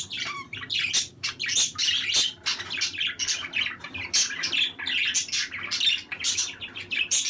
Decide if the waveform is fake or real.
real